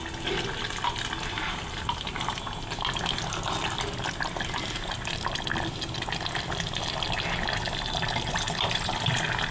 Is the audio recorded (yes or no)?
yes